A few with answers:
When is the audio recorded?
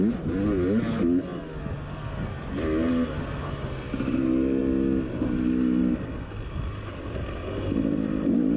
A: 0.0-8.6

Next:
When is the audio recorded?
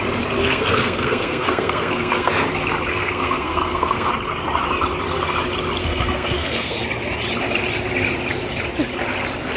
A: 0.0-0.4; 2.3-2.9; 4.1-5.8; 6.8-9.6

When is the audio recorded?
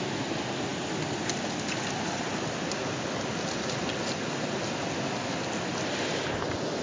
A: 0.0-6.8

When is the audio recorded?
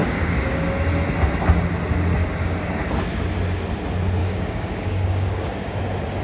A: 0.6-2.2; 2.9-4.2; 5.8-6.2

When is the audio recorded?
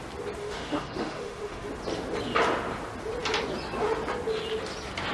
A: 0.0-0.4; 1.7-5.1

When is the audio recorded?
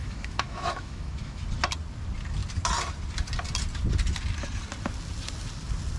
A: 1.4-6.0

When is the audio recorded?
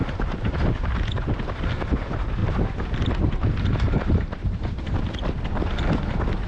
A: 0.0-2.4; 5.0-6.5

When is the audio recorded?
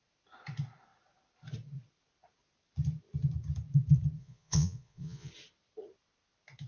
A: 0.0-4.2; 5.3-6.7